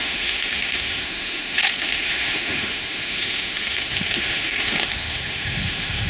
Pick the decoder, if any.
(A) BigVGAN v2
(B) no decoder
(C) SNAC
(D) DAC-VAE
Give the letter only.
D